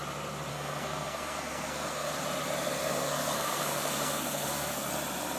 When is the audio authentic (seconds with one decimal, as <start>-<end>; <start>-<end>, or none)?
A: 0.0-0.5; 2.1-2.8; 4.9-5.4